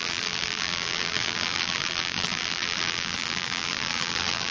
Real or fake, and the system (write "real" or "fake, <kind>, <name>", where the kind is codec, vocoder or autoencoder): fake, vocoder, BigVGAN v2